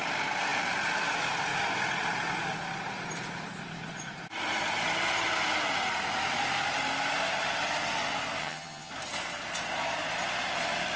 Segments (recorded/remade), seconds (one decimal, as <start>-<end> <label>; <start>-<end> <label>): 0.0-8.4 recorded; 8.4-8.9 remade; 8.9-11.0 recorded